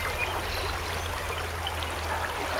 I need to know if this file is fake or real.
real